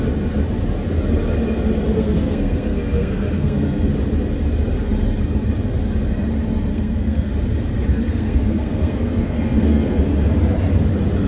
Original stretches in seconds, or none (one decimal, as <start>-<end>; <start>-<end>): 0.0-1.9; 3.9-6.7; 7.3-7.9; 10.0-11.3